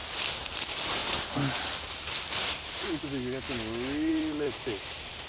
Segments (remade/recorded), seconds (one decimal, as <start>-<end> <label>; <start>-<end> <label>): 0.0-0.6 recorded; 0.6-1.0 remade; 1.0-4.1 recorded; 4.1-5.3 remade